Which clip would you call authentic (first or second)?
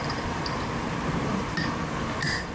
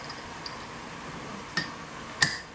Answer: second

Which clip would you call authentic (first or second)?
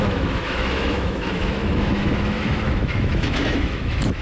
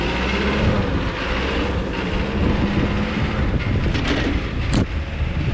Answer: second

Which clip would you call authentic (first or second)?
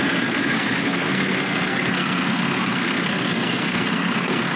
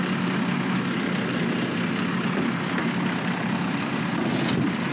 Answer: second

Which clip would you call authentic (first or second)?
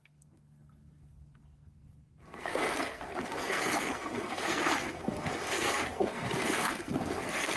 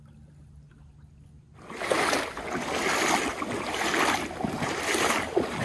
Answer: second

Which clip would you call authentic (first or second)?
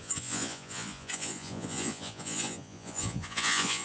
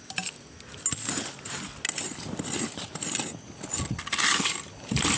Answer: second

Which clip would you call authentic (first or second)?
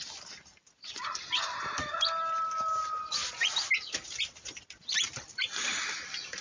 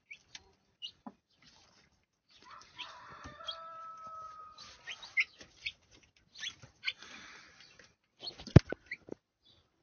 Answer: first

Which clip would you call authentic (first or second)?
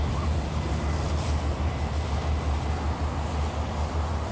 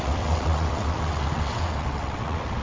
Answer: first